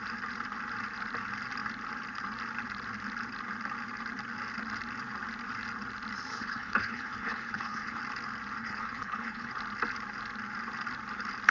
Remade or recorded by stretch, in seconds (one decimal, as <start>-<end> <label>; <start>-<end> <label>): 0.0-6.3 recorded; 6.3-8.0 remade; 8.0-8.6 recorded; 8.6-9.5 remade; 9.5-11.5 recorded